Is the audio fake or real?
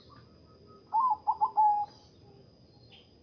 real